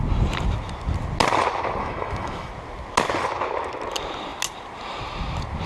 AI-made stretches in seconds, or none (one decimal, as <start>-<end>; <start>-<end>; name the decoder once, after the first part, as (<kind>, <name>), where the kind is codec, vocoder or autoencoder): 1.8-2.5 (autoencoder, DAC-VAE)